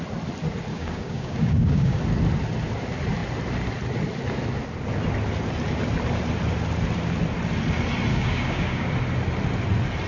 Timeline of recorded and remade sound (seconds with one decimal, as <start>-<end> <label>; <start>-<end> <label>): 0.0-0.7 recorded; 0.7-2.0 remade; 2.0-8.1 recorded; 8.1-8.9 remade; 8.9-10.1 recorded